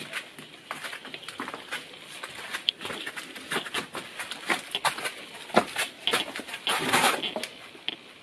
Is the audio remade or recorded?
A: recorded